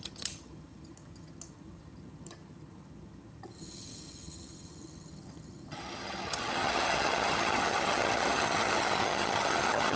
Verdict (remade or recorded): remade